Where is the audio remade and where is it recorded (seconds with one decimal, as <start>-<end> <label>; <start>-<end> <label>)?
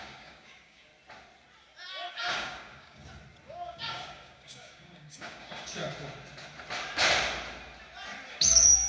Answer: 0.0-0.9 remade; 0.9-2.1 recorded; 2.1-3.0 remade; 3.0-3.5 recorded; 3.5-5.8 remade; 5.8-8.3 recorded; 8.3-8.9 remade